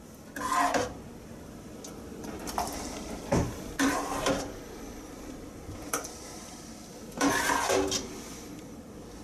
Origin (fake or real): fake